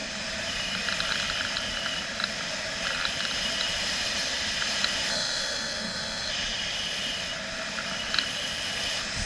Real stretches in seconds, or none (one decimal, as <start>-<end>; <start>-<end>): 0.0-5.1; 6.3-9.2